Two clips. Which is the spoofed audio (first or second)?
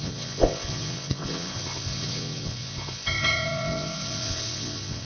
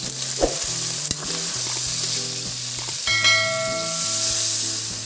first